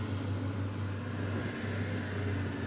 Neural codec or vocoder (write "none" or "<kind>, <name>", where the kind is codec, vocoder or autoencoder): none